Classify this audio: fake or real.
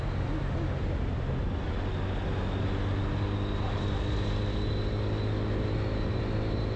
real